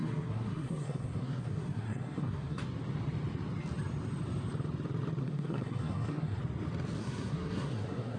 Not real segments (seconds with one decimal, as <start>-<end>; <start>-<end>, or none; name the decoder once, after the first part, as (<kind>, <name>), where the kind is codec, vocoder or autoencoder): 0.0-2.6 (codec, SNAC); 5.2-6.4; 7.0-8.2